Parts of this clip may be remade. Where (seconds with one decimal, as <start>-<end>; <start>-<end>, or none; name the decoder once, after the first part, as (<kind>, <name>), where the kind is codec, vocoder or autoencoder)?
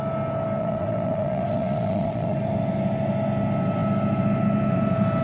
0.6-2.4 (vocoder, Vocos)